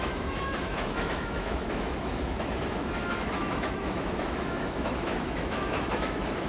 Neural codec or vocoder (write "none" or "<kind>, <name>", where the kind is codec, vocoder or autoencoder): autoencoder, DAC-VAE